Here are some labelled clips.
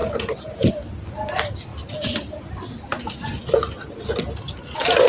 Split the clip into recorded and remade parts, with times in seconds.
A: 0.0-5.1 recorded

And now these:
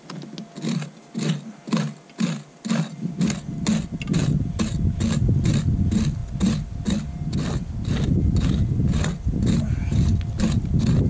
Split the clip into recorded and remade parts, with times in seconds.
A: 0.0-11.1 recorded

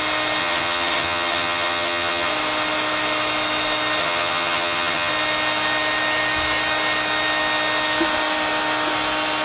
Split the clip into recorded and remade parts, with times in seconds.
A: 0.0-0.4 recorded; 0.4-2.3 remade; 2.3-4.0 recorded; 4.0-5.1 remade; 5.1-9.4 recorded

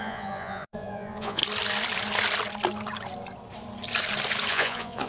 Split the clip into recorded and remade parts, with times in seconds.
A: 0.0-1.4 remade; 1.4-4.5 recorded; 4.5-5.1 remade

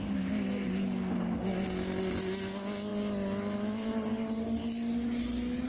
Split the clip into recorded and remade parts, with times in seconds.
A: 0.0-5.7 recorded